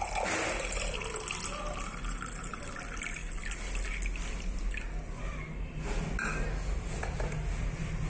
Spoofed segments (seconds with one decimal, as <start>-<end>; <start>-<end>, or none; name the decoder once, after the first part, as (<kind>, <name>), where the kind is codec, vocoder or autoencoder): none